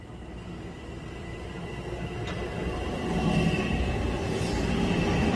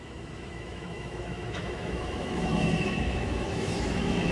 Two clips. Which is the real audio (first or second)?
first